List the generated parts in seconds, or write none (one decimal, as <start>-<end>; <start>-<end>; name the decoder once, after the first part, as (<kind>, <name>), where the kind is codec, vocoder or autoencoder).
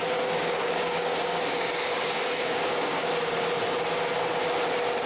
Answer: 0.0-3.1 (codec, DAC)